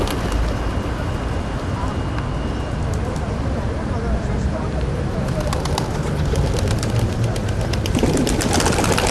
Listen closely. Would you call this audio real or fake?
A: real